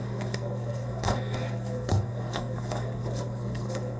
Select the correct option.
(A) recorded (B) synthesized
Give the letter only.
B